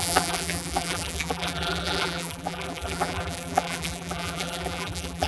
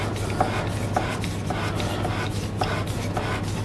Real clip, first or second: second